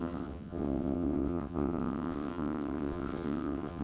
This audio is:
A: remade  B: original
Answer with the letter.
A